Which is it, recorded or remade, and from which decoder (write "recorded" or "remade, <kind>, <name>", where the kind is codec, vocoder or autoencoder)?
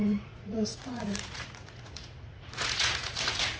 remade, vocoder, Vocos